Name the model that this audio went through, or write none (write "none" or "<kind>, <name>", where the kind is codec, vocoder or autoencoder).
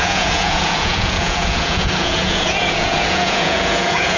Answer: vocoder, Vocos